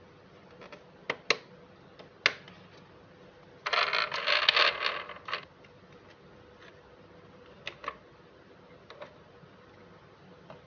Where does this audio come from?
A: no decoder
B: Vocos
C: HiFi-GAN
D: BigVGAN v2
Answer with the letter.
A